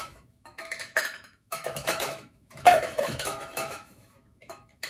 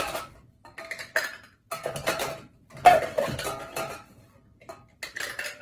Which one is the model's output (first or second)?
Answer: first